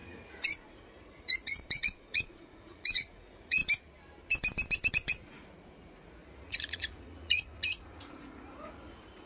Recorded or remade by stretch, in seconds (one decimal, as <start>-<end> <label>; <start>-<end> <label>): 0.0-3.6 remade; 3.6-4.9 recorded; 4.9-9.3 remade